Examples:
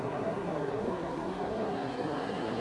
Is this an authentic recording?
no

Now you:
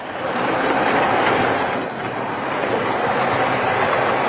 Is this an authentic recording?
yes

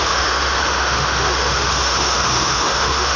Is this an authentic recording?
no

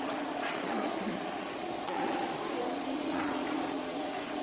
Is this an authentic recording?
no